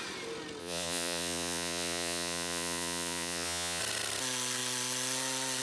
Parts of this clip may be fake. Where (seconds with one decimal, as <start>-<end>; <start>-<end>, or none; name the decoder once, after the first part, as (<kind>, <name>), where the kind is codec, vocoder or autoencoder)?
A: 0.6-3.8 (vocoder, Vocos)